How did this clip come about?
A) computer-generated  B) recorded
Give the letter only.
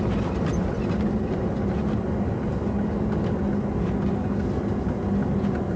B